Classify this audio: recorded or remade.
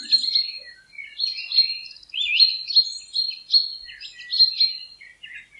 recorded